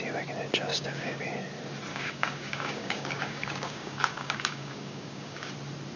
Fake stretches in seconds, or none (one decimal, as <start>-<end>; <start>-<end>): 0.7-1.2; 1.9-5.5